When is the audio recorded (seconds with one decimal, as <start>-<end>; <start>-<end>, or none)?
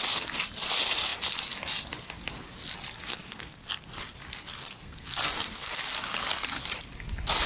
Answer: 0.0-3.1; 3.7-4.6; 5.8-7.5